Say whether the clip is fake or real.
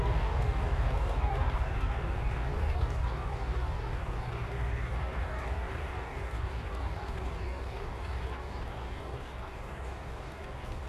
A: fake